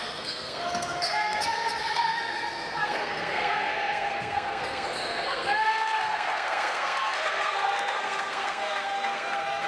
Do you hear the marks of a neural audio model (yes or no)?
yes